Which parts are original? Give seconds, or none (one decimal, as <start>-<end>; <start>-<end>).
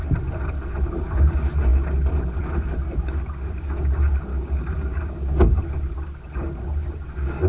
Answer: 0.0-4.3; 5.6-7.5